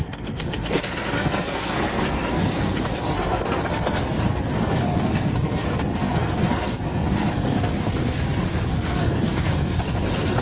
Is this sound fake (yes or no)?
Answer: yes